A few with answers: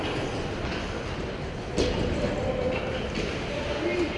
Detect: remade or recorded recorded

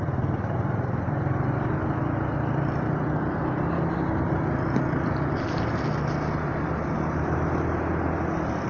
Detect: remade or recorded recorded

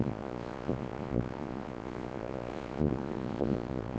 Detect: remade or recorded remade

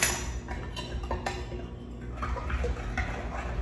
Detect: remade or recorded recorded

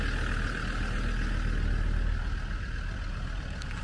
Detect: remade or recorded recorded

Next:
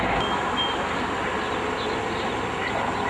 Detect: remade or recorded recorded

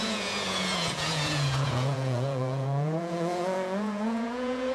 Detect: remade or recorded remade